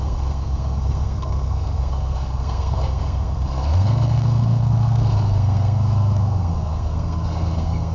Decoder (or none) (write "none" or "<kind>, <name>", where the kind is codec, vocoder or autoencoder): codec, SNAC